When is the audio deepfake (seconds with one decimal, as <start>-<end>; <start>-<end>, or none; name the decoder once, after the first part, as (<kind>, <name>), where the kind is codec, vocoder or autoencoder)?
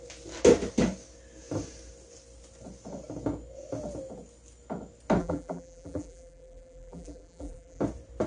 5.2-7.8 (vocoder, BigVGAN v2)